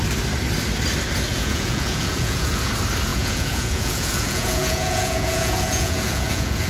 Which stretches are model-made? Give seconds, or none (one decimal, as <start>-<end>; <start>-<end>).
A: 1.3-2.7; 3.1-6.7